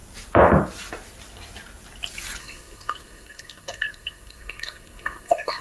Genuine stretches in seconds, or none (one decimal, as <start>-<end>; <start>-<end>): 0.0-2.4